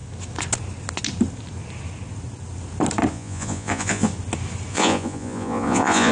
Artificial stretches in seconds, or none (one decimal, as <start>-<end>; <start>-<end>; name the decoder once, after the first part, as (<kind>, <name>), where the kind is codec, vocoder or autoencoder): 3.1-4.1 (vocoder, Vocos); 4.7-6.1